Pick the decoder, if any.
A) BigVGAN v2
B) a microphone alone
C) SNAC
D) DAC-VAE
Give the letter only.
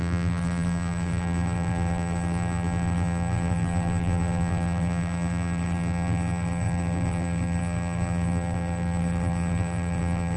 A